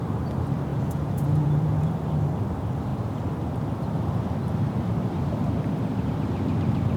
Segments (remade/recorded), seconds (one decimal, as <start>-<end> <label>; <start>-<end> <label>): 0.0-0.7 recorded; 0.7-1.9 remade; 1.9-7.0 recorded